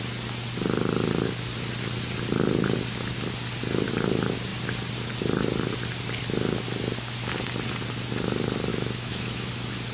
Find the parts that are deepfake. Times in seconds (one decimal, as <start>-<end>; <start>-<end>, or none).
8.7-9.5